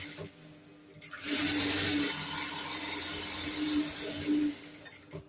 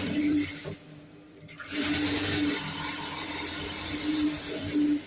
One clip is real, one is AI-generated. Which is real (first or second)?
first